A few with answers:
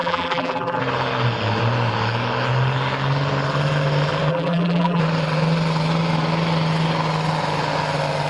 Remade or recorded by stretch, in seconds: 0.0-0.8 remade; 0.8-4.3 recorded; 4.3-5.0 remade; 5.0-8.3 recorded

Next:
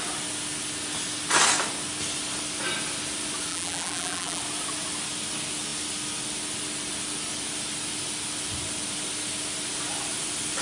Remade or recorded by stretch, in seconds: 0.0-3.5 recorded; 3.5-4.4 remade; 4.4-10.6 recorded

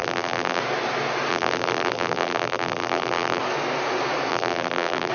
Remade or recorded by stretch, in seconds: 0.0-0.6 remade; 0.6-1.3 recorded; 1.3-3.4 remade; 3.4-4.3 recorded; 4.3-5.1 remade

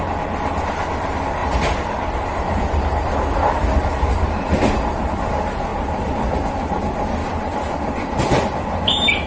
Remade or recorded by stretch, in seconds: 0.0-1.4 recorded; 1.4-2.6 remade; 2.6-5.7 recorded; 5.7-6.8 remade; 6.8-7.2 recorded; 7.2-9.3 remade